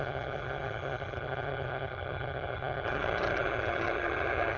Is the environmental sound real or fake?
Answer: fake